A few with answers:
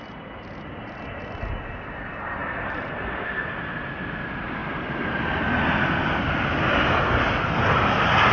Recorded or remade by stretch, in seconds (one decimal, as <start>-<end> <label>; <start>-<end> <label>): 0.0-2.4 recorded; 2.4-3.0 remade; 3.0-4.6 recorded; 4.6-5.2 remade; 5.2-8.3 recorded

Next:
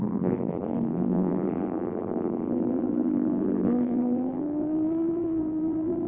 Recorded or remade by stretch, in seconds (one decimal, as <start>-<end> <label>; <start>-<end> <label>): 0.0-6.1 remade

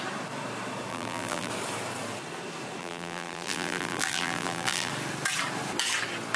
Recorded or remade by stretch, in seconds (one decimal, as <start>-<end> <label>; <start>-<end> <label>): 0.0-0.9 recorded; 0.9-1.5 remade; 1.5-2.8 recorded; 2.8-4.9 remade; 4.9-6.4 recorded

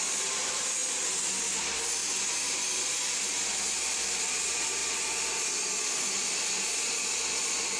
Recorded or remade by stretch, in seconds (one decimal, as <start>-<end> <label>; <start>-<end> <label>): 0.0-0.8 remade; 0.8-1.4 recorded; 1.4-4.8 remade; 4.8-6.9 recorded; 6.9-7.8 remade

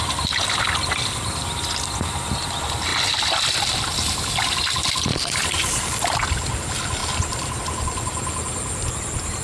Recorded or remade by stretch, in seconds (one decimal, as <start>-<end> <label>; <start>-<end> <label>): 0.0-9.4 recorded

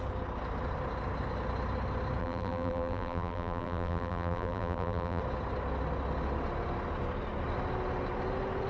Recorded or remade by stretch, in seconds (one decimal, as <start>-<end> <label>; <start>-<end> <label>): 0.0-2.2 recorded; 2.2-5.2 remade; 5.2-8.7 recorded